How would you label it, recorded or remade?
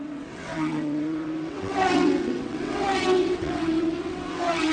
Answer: remade